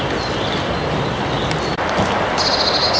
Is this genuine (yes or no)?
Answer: yes